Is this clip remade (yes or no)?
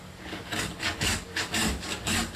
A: yes